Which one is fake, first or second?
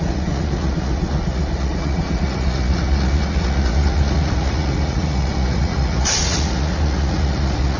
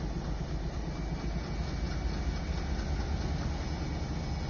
first